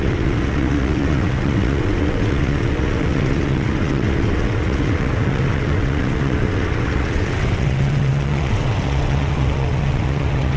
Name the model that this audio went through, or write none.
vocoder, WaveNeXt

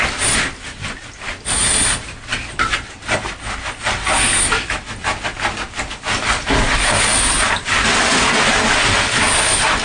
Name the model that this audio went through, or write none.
none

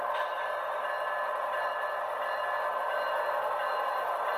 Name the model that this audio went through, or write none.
none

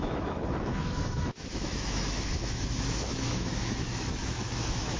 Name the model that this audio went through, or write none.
autoencoder, DAC-VAE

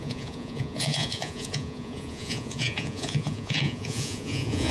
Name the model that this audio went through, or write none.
vocoder, Vocos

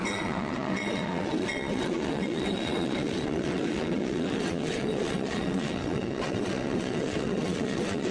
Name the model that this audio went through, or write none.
vocoder, WaveNeXt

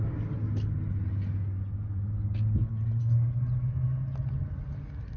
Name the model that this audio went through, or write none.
none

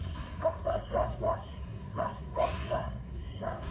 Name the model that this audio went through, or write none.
codec, SNAC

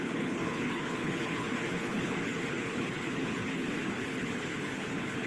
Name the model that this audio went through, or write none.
codec, HILCodec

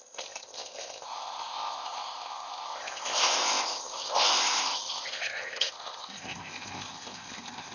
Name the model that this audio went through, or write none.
codec, ZipCodec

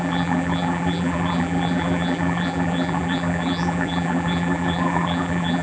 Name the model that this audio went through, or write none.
vocoder, BigVGAN v2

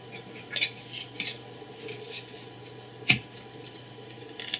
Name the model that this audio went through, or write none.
none